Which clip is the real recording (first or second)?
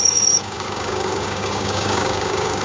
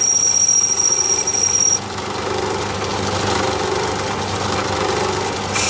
second